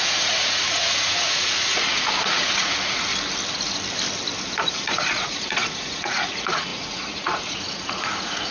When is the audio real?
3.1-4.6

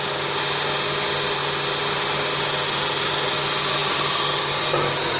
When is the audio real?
0.0-5.2